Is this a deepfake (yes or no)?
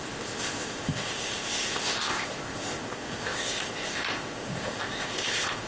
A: yes